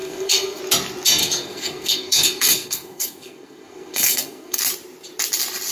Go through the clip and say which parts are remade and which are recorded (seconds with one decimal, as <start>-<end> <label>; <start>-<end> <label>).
0.0-0.6 remade; 0.6-1.2 recorded; 1.2-4.6 remade; 4.6-5.7 recorded